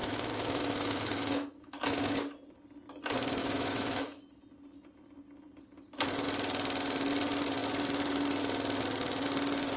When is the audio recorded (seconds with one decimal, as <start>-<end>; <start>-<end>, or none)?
2.1-3.4; 4.2-9.8